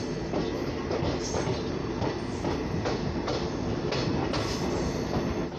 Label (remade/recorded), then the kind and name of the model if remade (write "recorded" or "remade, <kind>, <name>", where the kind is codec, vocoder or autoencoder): recorded